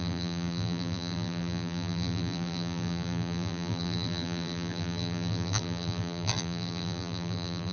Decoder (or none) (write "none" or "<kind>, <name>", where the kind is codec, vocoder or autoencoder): vocoder, BigVGAN v2